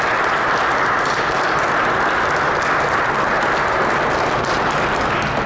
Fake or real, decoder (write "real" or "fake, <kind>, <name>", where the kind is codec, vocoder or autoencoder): real